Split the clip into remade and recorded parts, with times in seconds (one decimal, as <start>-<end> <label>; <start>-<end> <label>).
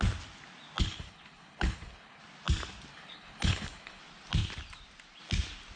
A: 0.0-0.8 recorded; 0.8-2.2 remade; 2.2-2.9 recorded; 2.9-4.0 remade; 4.0-5.8 recorded